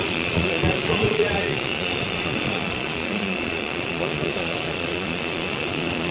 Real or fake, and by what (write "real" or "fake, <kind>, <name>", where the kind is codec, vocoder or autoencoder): fake, vocoder, Vocos